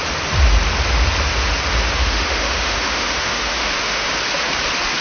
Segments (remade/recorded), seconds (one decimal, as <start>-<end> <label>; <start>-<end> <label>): 0.0-2.0 recorded; 2.0-4.1 remade; 4.1-5.0 recorded